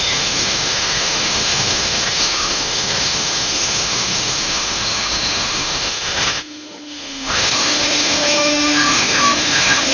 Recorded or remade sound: remade